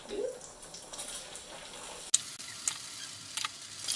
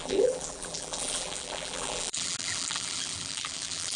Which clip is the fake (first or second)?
second